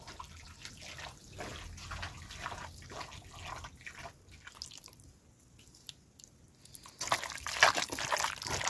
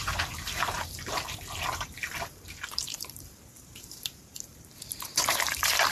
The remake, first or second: second